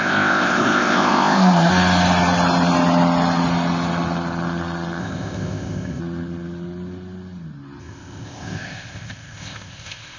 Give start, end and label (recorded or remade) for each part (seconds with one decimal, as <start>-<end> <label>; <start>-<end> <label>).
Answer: 0.0-1.7 remade; 1.7-5.0 recorded; 5.0-6.0 remade; 6.0-7.8 recorded; 7.8-10.2 remade